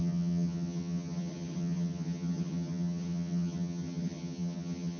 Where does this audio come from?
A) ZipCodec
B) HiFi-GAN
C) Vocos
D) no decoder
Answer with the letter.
B